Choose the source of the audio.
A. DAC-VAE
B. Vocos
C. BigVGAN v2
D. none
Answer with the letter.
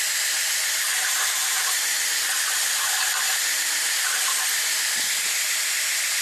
C